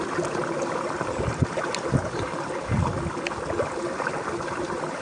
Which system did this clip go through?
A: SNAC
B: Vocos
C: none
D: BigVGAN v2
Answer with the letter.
C